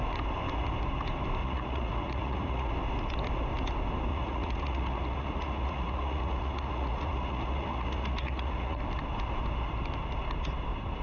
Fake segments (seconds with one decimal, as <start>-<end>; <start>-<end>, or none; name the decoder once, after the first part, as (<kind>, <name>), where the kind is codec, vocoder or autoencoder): 1.4-2.7 (vocoder, Vocos); 4.1-8.8